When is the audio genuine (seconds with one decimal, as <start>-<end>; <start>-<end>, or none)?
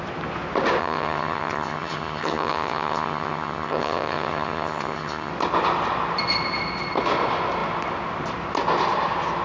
0.0-0.8; 5.3-9.4